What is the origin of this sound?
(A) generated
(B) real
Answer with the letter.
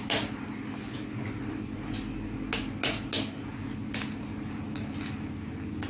B